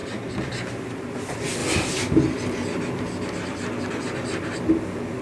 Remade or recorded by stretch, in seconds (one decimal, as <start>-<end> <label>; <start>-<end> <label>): 0.0-1.2 remade; 1.2-5.2 recorded